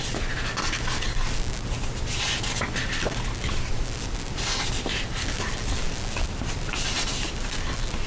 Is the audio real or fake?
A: fake